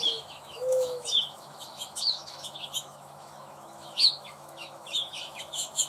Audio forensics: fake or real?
fake